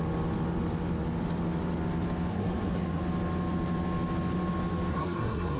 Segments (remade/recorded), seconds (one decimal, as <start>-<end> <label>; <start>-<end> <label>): 0.0-2.3 recorded; 2.3-3.0 remade; 3.0-4.9 recorded; 4.9-5.6 remade